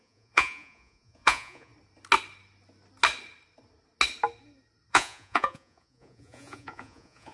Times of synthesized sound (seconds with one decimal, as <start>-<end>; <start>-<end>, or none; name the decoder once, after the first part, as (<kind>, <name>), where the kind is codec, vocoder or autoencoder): 0.0-1.7 (vocoder, Vocos); 4.9-7.3